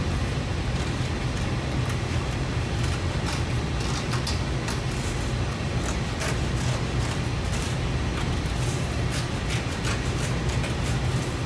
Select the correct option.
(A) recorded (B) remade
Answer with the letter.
A